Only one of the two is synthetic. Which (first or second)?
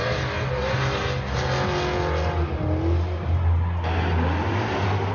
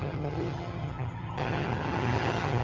second